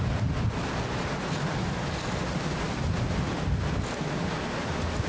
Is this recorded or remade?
recorded